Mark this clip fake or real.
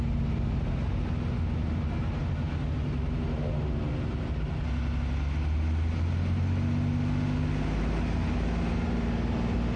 real